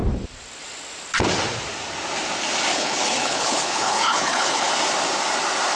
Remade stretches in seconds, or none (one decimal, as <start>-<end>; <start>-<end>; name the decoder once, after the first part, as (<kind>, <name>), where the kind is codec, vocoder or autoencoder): 2.7-4.7 (codec, HILCodec)